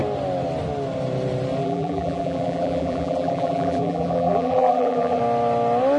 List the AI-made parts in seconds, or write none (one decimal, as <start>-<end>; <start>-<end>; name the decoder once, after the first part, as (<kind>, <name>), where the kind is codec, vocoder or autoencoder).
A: 1.6-5.2 (vocoder, BigVGAN v2)